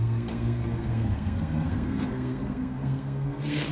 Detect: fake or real fake